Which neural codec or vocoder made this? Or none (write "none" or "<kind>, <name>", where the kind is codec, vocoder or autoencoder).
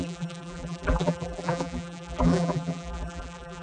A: vocoder, BigVGAN v2